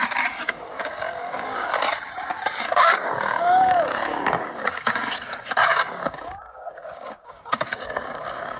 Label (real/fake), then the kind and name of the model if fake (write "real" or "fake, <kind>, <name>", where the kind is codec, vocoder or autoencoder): fake, codec, DAC